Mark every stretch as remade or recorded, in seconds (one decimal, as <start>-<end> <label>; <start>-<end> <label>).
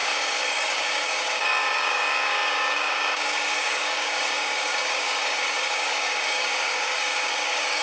0.0-7.8 remade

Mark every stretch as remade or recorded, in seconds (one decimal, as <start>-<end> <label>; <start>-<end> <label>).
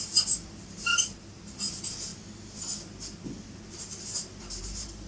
0.0-0.9 remade; 0.9-1.7 recorded; 1.7-2.1 remade; 2.1-4.4 recorded; 4.4-5.1 remade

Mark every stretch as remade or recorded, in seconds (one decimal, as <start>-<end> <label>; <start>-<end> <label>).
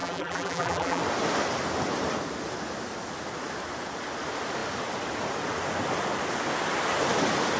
0.0-1.0 remade; 1.0-7.6 recorded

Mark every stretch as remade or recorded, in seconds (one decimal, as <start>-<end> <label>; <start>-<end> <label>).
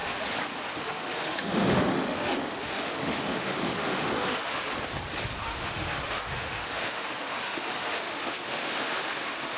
0.0-0.7 recorded; 0.7-4.6 remade; 4.6-5.4 recorded; 5.4-9.6 remade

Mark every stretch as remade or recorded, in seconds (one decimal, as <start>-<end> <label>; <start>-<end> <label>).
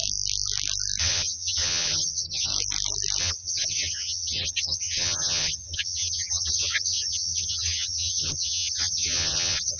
0.0-1.0 recorded; 1.0-2.5 remade; 2.5-3.2 recorded; 3.2-9.8 remade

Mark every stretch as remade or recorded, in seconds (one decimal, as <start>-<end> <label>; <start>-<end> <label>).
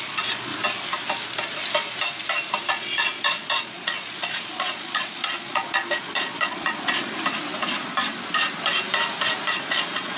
0.0-0.5 remade; 0.5-2.7 recorded; 2.7-7.1 remade; 7.1-9.7 recorded; 9.7-10.2 remade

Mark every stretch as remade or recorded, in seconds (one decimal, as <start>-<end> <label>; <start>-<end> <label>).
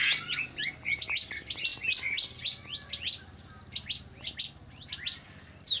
0.0-5.8 recorded